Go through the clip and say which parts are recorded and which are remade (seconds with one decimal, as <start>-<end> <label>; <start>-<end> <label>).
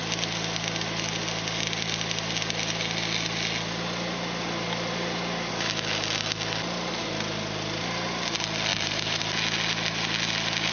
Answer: 0.0-8.7 recorded; 8.7-9.2 remade; 9.2-10.7 recorded